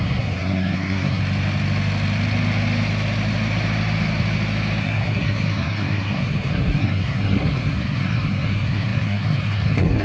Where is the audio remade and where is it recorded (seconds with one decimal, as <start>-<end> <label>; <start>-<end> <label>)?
0.0-1.2 remade; 1.2-4.8 recorded; 4.8-10.0 remade